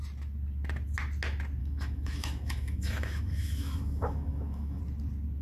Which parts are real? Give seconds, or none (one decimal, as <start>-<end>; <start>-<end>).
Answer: 0.0-1.6; 4.8-5.4

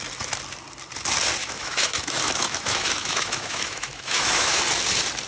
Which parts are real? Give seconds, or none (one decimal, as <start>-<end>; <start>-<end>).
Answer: 0.0-1.4; 4.6-5.3